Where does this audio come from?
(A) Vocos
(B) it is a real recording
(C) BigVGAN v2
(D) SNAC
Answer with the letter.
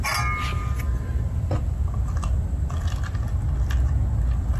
B